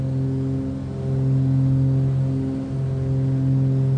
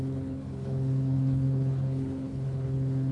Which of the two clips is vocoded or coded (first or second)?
second